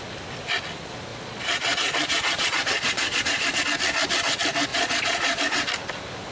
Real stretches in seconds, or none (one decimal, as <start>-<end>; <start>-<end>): 0.0-1.1; 3.6-4.7; 5.4-6.3